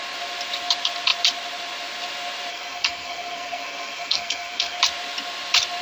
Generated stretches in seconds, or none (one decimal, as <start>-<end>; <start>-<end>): 2.5-4.8